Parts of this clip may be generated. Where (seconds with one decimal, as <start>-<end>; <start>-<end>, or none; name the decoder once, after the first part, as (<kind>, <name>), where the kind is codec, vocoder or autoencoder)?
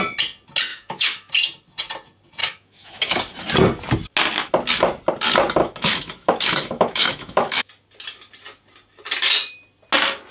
0.7-1.3 (autoencoder, DAC-VAE); 2.4-3.2; 5.6-7.7